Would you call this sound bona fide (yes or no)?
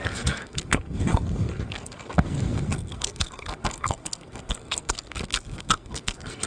no